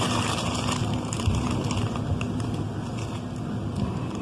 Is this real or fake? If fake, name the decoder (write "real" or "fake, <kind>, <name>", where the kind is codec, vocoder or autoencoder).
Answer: real